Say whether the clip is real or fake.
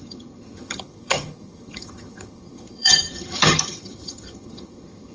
fake